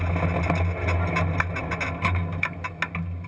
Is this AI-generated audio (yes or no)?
no